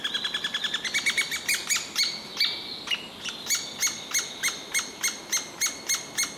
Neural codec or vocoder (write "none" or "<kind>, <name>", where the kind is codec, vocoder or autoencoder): none